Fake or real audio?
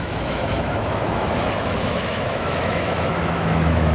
fake